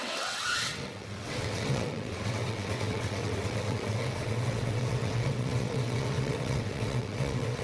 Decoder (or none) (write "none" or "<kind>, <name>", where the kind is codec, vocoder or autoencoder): vocoder, WaveNeXt